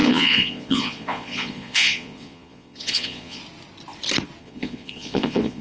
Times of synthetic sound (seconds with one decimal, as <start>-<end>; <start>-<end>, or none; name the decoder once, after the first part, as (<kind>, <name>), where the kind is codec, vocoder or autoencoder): 0.0-3.4 (vocoder, Vocos); 4.4-5.6